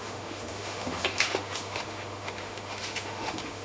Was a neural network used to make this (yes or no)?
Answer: yes